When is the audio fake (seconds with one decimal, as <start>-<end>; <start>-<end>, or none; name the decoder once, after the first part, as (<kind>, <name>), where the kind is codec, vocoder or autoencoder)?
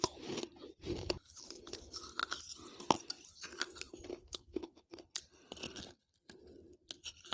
4.2-5.0 (codec, SNAC)